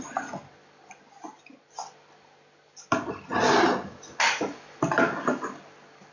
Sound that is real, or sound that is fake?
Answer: real